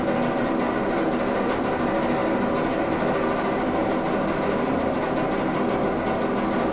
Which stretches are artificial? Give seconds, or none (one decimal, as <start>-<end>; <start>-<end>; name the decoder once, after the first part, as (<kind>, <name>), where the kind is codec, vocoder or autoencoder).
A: none